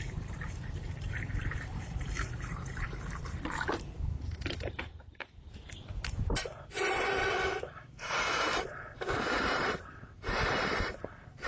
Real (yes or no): no